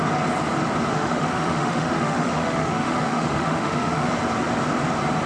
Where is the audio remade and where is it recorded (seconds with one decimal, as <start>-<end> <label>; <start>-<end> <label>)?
0.0-0.9 recorded; 0.9-4.1 remade; 4.1-5.3 recorded